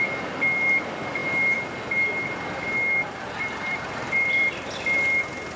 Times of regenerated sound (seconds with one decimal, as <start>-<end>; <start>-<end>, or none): 3.0-5.0